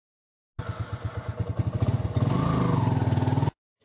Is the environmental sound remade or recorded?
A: recorded